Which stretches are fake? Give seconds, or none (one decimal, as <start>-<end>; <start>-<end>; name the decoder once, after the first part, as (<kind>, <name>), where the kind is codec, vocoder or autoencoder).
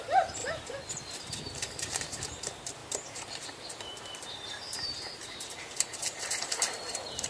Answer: 0.0-0.4 (vocoder, BigVGAN v2); 1.2-7.3